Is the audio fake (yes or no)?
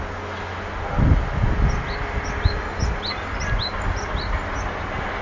no